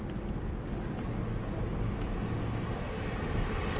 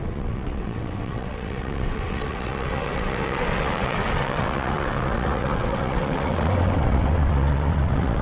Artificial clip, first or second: second